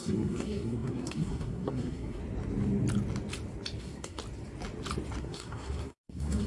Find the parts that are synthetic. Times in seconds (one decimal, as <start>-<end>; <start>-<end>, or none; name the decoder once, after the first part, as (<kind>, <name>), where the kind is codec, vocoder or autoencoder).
0.0-2.2 (codec, SNAC); 3.8-4.2; 5.2-6.5